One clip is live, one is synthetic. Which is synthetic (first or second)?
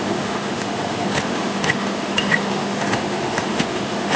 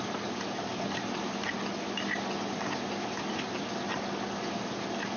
first